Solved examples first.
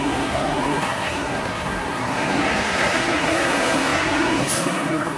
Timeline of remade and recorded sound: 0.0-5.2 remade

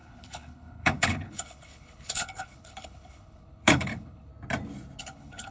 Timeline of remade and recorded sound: 0.0-4.3 remade; 4.3-5.0 recorded; 5.0-5.5 remade

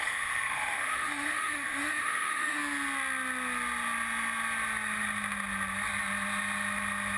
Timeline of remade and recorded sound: 0.0-2.6 remade; 2.6-7.2 recorded